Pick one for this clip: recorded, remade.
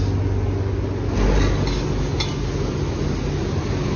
recorded